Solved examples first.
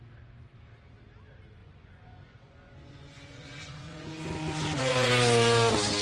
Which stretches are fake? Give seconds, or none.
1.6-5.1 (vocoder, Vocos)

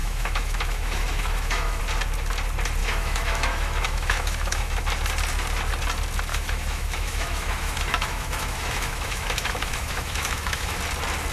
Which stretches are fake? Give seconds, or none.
0.0-1.8 (autoencoder, DAC-VAE); 2.8-4.8; 6.3-10.8

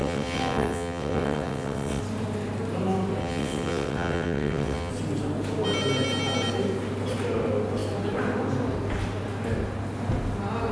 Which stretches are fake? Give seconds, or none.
0.0-2.0 (vocoder, WaveNeXt); 3.2-4.9

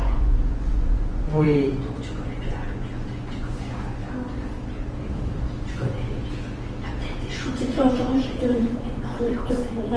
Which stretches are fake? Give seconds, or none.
0.0-4.0 (vocoder, Vocos); 5.7-6.2; 7.2-10.0

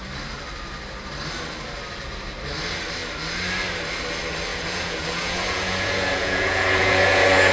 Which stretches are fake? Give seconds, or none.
4.5-7.5 (vocoder, Vocos)

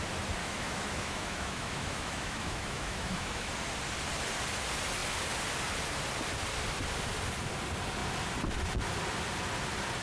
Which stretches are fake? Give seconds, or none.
0.4-3.5 (autoencoder, DAC-VAE)

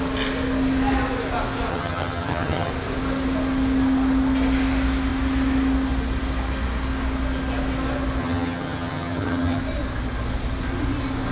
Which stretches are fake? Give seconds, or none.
1.7-2.7 (vocoder, HiFi-GAN); 8.2-9.6

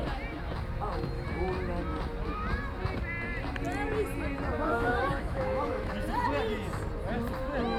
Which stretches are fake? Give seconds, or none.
4.7-5.9 (autoencoder, DAC-VAE)